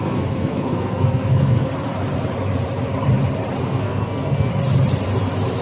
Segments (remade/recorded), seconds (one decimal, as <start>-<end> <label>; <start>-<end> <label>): 0.0-1.7 remade; 1.7-3.6 recorded; 3.6-4.5 remade; 4.5-5.6 recorded